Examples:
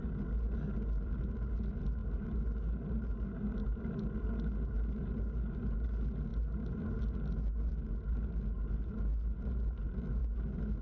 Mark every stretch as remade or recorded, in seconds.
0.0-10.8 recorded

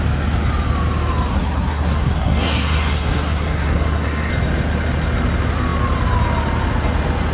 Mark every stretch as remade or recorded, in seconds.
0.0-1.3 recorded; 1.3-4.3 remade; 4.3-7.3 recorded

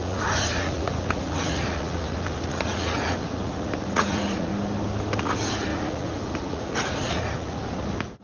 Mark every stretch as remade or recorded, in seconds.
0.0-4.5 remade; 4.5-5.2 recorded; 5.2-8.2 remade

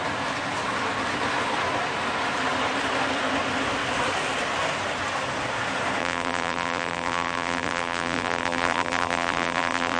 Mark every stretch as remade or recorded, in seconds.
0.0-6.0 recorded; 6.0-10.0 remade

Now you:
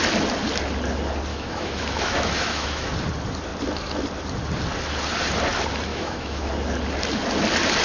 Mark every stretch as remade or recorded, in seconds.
0.0-1.3 recorded; 1.3-2.9 remade; 2.9-5.9 recorded; 5.9-6.5 remade; 6.5-7.8 recorded

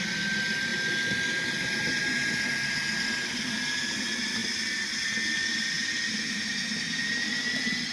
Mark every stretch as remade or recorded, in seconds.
0.0-7.9 recorded

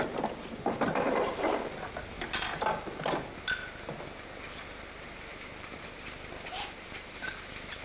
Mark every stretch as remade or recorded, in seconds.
0.0-5.3 recorded; 5.3-7.8 remade

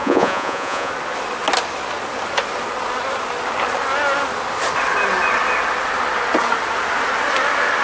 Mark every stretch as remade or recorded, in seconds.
0.0-0.9 remade; 0.9-7.8 recorded